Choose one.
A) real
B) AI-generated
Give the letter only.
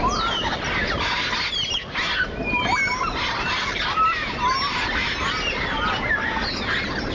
A